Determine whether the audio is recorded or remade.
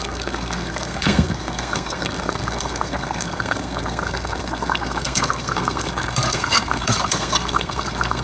remade